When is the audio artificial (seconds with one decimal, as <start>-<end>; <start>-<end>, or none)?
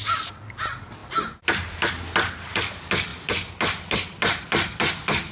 none